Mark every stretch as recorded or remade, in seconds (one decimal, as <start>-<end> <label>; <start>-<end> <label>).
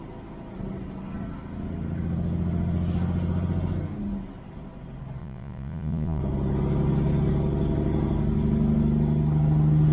0.0-5.2 recorded; 5.2-6.2 remade; 6.2-9.9 recorded